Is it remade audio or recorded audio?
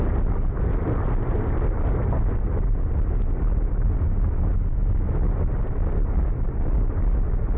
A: recorded